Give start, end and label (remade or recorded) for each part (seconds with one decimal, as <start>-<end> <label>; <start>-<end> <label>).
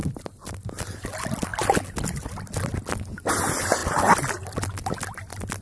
0.0-5.6 recorded